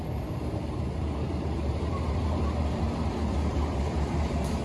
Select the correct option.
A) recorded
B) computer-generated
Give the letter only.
B